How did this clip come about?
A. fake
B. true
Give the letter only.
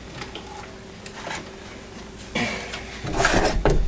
B